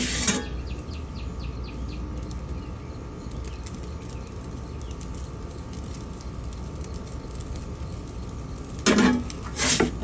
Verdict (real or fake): real